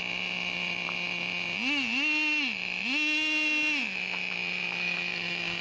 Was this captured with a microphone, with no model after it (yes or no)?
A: yes